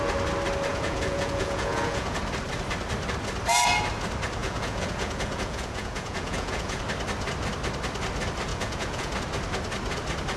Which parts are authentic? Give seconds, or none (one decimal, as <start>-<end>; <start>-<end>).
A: 0.0-0.7; 2.2-4.4; 6.8-8.5; 9.1-10.4